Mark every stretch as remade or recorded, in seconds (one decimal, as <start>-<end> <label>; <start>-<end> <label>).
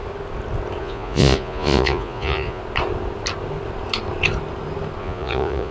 0.0-0.8 recorded; 0.8-2.6 remade; 2.6-5.0 recorded; 5.0-5.7 remade